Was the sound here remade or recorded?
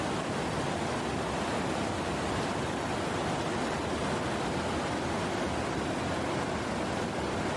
recorded